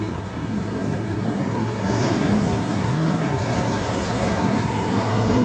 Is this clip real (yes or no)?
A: no